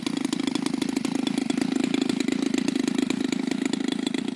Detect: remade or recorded recorded